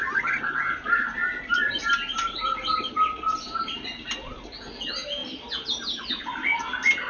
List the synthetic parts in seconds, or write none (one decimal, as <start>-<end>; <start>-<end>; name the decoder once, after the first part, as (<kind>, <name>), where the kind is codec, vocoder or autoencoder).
none